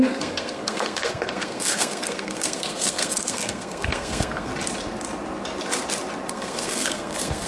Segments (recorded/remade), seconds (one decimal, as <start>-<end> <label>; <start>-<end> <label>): 0.0-4.5 remade; 4.5-6.3 recorded; 6.3-7.5 remade